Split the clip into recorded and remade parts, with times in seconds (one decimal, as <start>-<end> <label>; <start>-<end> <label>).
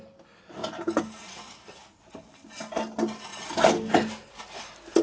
0.0-5.0 recorded